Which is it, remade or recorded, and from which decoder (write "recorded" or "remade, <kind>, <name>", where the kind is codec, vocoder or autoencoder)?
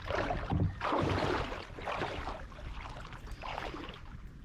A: recorded